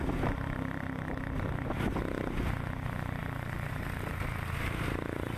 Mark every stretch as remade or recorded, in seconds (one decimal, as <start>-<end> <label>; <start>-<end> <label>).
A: 0.0-5.4 remade